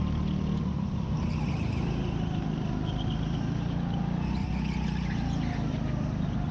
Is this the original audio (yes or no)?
yes